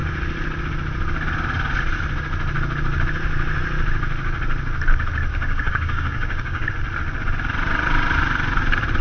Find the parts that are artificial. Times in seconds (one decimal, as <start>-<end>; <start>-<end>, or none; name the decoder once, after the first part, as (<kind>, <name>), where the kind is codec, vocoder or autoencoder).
5.3-6.7 (codec, DAC)